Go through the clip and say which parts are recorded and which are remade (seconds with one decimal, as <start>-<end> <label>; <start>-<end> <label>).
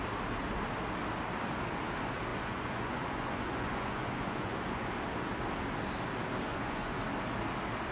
0.0-2.3 recorded; 2.3-4.9 remade; 4.9-6.5 recorded; 6.5-7.0 remade; 7.0-7.9 recorded